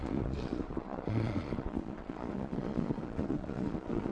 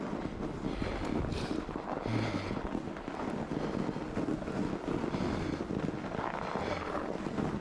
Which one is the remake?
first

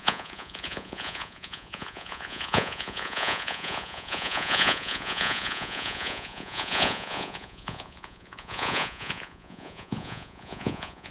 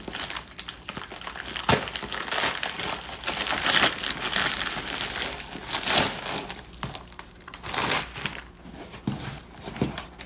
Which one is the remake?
first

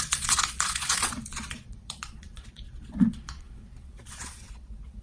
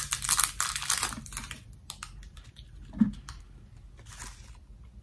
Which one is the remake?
first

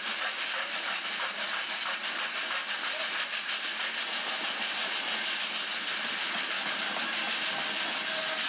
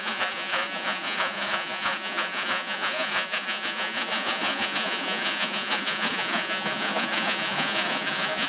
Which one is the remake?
second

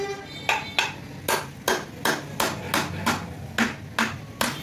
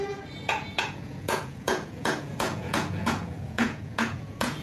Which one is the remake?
second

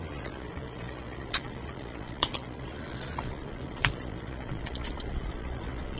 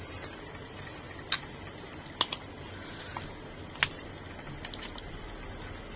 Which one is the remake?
first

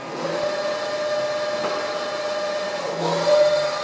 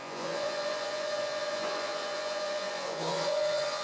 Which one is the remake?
second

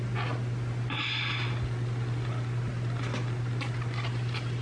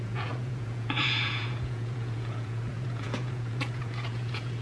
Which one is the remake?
second